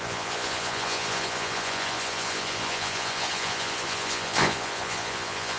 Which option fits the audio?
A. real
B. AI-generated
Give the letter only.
B